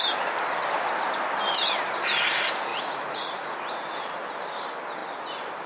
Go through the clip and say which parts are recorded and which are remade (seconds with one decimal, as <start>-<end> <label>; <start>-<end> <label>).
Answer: 0.0-2.7 recorded; 2.7-3.5 remade; 3.5-5.7 recorded